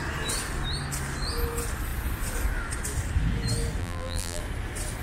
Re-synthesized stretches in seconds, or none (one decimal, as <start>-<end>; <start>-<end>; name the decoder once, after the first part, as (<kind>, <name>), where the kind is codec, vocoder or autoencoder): 3.8-4.4 (vocoder, BigVGAN v2)